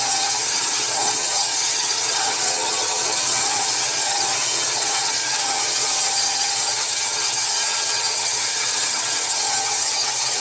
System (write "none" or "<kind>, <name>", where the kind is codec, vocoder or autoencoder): vocoder, HiFi-GAN